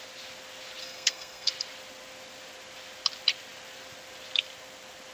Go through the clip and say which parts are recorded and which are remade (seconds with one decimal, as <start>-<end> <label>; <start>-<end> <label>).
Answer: 0.0-0.8 recorded; 0.8-1.5 remade; 1.5-5.1 recorded